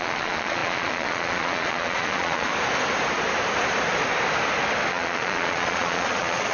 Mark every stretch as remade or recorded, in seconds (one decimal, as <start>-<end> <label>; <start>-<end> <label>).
0.0-2.5 remade; 2.5-4.9 recorded; 4.9-6.5 remade